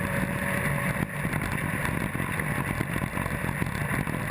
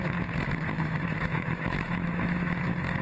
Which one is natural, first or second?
first